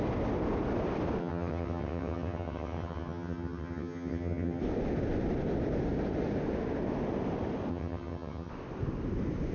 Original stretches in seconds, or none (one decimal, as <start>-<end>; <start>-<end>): 0.0-1.2; 4.6-7.7; 8.5-9.5